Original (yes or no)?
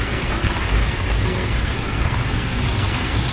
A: no